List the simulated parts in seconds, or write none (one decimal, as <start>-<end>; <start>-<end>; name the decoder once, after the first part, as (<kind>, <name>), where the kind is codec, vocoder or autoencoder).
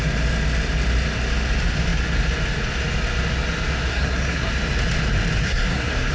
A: 3.9-4.5 (codec, SNAC); 5.4-6.1